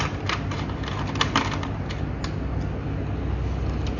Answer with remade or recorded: recorded